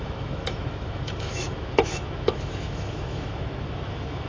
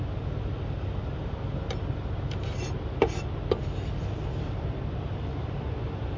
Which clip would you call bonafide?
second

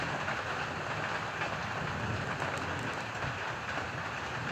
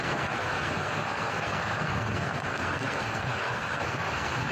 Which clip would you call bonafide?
first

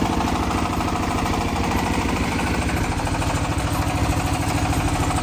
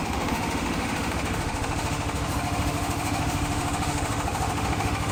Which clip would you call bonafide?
first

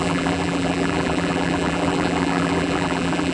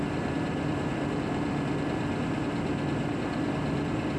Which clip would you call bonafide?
second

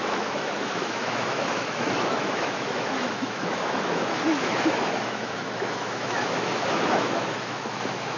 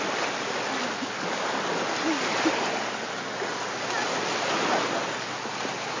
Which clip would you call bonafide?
second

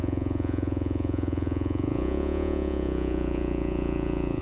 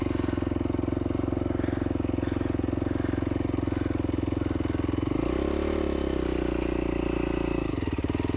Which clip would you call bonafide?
second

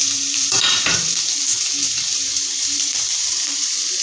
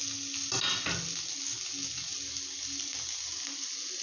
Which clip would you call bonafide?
second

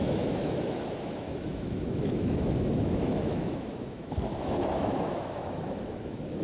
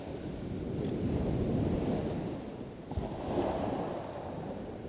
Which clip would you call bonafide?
second